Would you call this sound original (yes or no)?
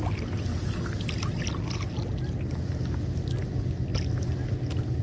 yes